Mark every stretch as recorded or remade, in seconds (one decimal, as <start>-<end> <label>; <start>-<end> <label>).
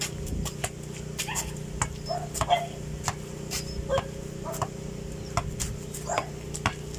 0.0-7.0 recorded